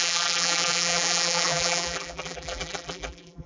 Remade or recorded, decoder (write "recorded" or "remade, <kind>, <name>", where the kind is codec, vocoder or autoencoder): remade, vocoder, BigVGAN v2